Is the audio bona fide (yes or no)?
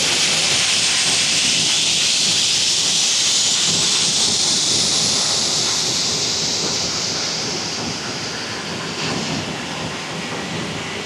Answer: yes